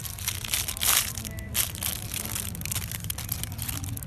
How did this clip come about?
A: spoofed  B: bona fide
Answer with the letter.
A